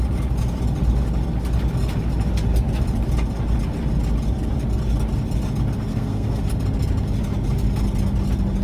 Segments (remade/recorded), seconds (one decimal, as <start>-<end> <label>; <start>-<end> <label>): 0.0-5.9 recorded; 5.9-6.4 remade; 6.4-8.6 recorded